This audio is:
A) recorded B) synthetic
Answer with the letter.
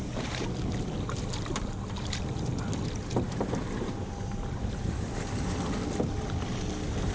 A